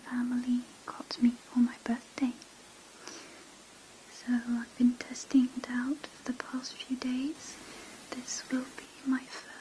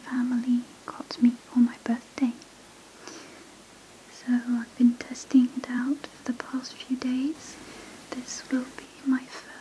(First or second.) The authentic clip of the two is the first